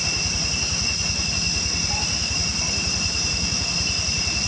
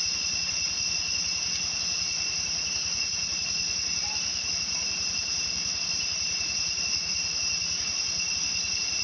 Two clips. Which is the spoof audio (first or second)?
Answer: second